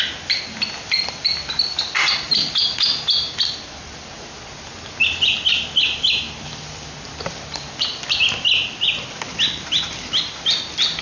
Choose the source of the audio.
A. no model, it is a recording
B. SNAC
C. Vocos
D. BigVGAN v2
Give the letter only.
A